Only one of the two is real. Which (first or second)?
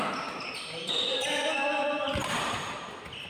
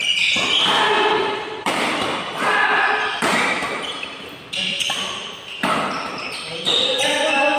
first